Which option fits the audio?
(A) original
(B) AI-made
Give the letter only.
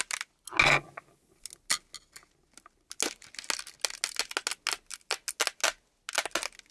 A